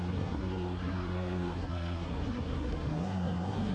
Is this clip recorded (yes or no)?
no